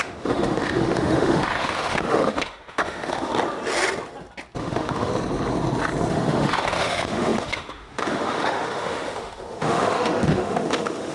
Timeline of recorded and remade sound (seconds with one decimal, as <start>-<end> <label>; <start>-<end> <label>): 0.0-3.3 remade; 3.3-4.6 recorded; 4.6-5.1 remade; 5.1-6.1 recorded; 6.1-11.1 remade